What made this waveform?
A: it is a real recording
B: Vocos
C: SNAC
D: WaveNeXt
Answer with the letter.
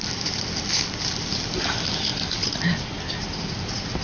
A